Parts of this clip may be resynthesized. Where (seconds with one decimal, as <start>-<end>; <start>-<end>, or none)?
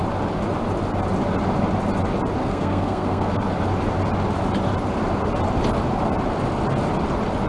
2.4-3.4